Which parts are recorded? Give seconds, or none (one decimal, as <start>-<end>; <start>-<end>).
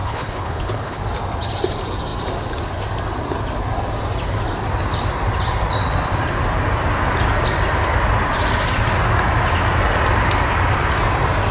1.0-11.5